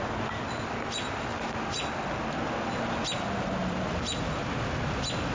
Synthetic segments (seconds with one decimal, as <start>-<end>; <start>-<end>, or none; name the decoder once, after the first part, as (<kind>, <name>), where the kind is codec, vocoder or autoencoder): 1.3-1.9 (vocoder, BigVGAN v2); 3.6-4.3

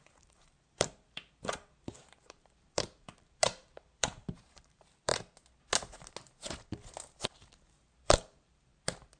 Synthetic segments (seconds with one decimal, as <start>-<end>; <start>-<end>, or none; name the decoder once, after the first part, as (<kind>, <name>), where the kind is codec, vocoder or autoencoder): 0.0-5.1 (vocoder, BigVGAN v2); 7.2-9.2

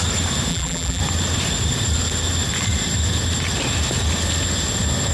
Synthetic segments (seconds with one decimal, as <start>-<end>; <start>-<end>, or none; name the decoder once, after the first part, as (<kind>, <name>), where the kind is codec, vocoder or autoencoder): 0.5-1.0 (vocoder, BigVGAN v2)

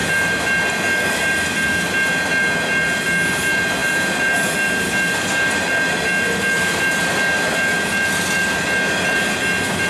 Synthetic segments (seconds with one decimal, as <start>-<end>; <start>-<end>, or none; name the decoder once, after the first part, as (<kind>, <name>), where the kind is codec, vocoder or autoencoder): 3.8-4.5 (vocoder, BigVGAN v2)

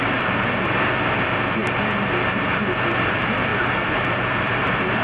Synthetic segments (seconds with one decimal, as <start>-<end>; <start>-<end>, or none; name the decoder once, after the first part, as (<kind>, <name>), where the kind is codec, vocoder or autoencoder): 0.0-1.6 (vocoder, BigVGAN v2); 2.4-3.5; 4.0-5.0

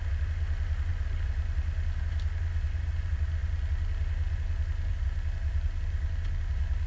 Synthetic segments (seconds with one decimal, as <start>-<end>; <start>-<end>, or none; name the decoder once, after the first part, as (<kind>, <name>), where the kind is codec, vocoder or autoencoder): none

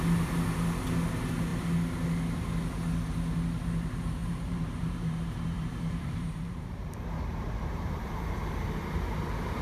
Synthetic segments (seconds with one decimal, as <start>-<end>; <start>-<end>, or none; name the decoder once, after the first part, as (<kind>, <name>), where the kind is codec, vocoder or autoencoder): 4.2-8.7 (vocoder, BigVGAN v2)

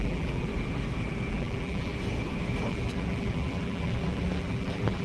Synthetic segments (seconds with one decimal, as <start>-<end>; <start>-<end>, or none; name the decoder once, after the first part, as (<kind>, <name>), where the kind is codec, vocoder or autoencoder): 0.0-0.5 (vocoder, BigVGAN v2); 1.3-1.9; 2.7-5.0